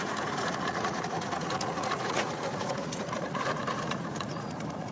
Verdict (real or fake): fake